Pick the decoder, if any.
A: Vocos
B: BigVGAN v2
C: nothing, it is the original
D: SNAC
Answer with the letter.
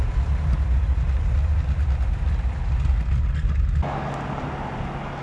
C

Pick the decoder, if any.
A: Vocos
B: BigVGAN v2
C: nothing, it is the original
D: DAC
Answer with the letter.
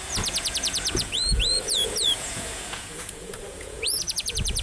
A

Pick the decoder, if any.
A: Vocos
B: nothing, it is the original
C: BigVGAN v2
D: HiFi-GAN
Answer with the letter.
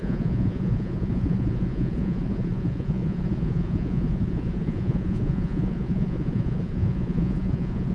A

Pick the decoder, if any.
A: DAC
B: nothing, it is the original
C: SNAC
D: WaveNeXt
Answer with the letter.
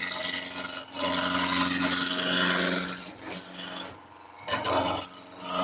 B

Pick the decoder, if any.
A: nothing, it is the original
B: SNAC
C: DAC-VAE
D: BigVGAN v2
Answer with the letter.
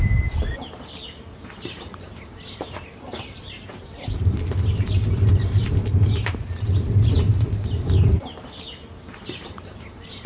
D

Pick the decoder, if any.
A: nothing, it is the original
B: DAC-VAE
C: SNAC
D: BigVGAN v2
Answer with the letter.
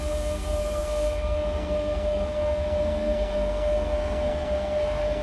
C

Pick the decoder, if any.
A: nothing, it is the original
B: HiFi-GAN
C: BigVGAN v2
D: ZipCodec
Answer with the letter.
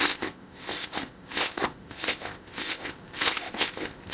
D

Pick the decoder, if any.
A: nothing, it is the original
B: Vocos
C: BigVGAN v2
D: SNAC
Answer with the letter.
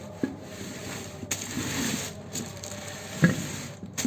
C